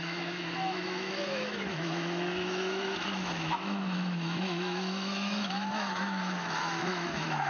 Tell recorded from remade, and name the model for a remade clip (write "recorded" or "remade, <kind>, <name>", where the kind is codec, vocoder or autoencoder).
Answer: remade, autoencoder, DAC-VAE